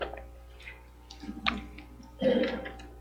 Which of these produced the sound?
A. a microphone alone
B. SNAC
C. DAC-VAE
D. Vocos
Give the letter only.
A